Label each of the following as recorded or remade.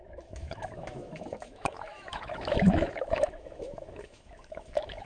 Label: remade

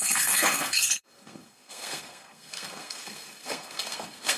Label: remade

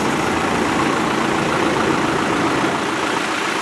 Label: remade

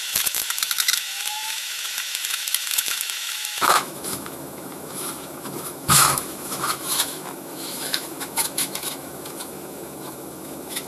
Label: remade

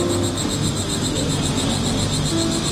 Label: recorded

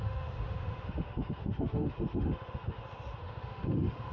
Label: remade